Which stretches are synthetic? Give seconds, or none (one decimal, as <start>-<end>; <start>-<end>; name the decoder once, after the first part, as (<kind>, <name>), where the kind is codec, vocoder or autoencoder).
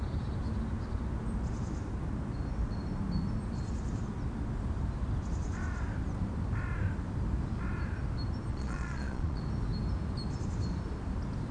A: 8.5-9.4 (vocoder, Vocos)